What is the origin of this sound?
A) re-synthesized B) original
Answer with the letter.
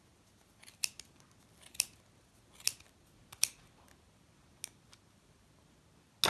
B